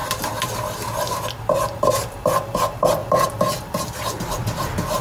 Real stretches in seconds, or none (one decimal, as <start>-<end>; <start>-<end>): 0.0-5.0